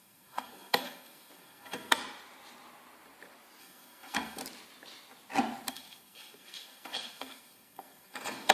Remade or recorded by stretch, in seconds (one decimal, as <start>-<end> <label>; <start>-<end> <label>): 0.0-2.0 remade; 2.0-3.6 recorded; 3.6-4.4 remade; 4.4-5.7 recorded; 5.7-8.5 remade